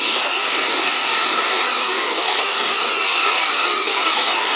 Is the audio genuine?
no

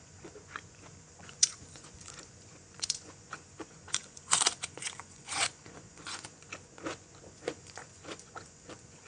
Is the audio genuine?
no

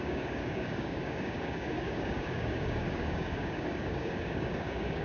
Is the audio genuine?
no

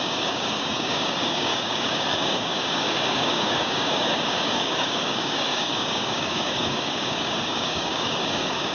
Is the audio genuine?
no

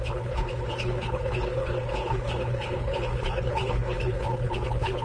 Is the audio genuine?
no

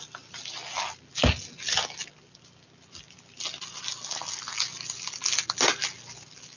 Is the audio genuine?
yes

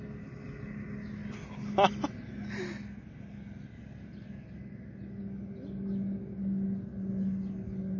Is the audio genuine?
yes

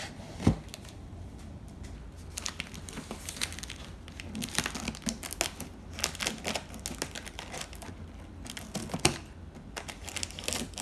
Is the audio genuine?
yes